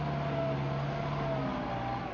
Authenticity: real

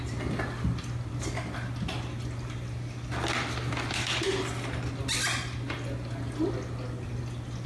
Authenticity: real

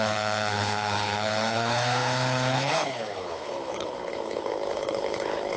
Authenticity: fake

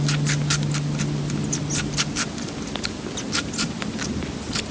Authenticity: real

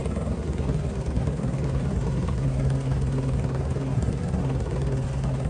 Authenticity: fake